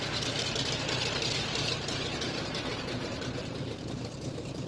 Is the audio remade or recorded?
remade